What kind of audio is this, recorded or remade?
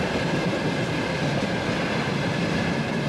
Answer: recorded